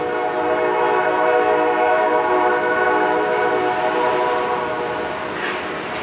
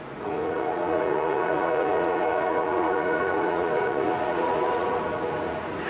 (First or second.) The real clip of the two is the first